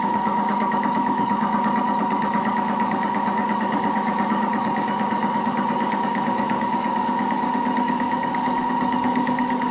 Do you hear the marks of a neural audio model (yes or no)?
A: yes